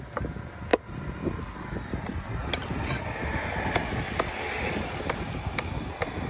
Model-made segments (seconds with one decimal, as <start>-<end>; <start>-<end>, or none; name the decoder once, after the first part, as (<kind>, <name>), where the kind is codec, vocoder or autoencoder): none